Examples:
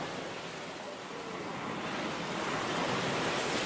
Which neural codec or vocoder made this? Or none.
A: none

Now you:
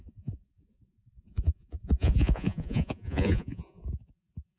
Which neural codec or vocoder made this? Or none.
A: vocoder, Vocos